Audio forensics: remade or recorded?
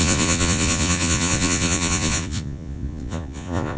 remade